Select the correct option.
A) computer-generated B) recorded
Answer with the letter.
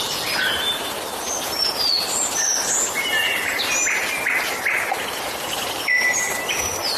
B